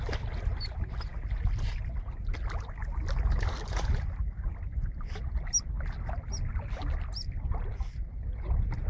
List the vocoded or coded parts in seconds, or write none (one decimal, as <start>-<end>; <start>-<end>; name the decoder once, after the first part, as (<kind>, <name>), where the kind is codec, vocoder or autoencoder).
none